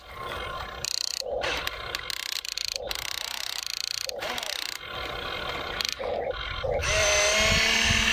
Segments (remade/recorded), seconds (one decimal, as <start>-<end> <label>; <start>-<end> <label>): 0.0-8.1 recorded